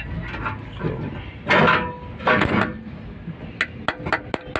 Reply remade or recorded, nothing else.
recorded